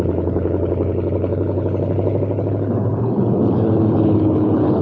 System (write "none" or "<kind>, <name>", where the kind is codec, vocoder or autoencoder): codec, HILCodec